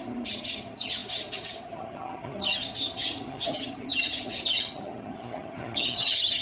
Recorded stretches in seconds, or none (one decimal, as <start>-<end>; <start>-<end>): none